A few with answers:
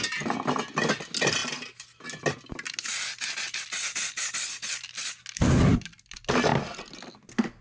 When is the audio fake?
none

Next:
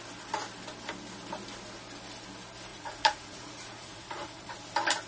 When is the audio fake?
2.7-4.5 (vocoder, Vocos)

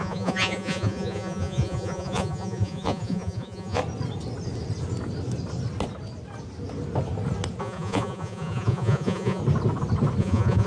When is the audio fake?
0.0-3.8 (vocoder, Vocos); 7.6-9.4; 10.2-10.7

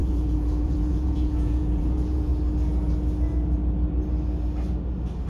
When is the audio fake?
0.0-2.3 (vocoder, Vocos)

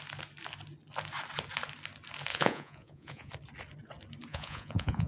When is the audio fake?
2.3-3.3 (vocoder, Vocos); 4.3-5.1

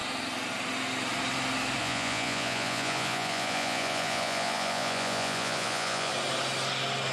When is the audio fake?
1.8-6.1 (vocoder, Vocos)

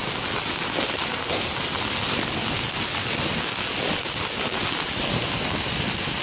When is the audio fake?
none

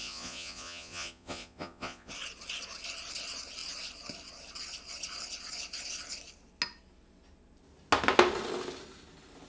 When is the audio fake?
0.0-2.1 (vocoder, Vocos)